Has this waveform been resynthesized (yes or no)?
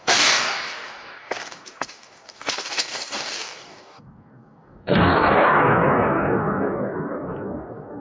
yes